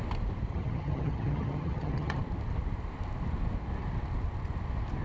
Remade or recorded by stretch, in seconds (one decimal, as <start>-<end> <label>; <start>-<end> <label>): 0.0-0.5 recorded; 0.5-2.2 remade; 2.2-5.0 recorded